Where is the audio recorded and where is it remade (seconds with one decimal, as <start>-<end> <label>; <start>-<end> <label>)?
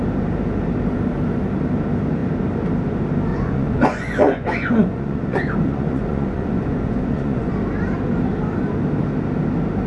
0.0-3.3 recorded; 3.3-7.5 remade; 7.5-9.9 recorded